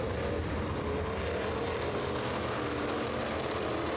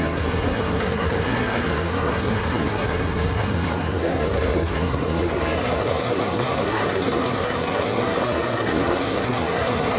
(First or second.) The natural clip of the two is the first